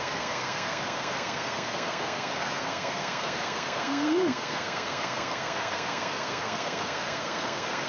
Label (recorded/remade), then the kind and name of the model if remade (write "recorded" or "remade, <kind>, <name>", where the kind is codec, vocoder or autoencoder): remade, codec, SNAC